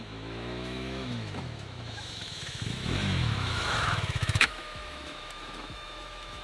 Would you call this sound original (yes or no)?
no